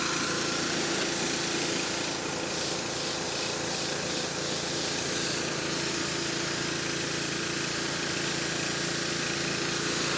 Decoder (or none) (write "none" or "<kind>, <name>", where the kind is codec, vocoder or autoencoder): none